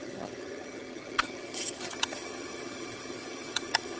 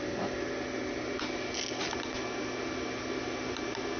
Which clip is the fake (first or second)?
first